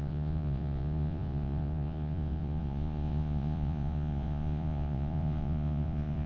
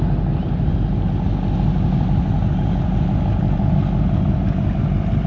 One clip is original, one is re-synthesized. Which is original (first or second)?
second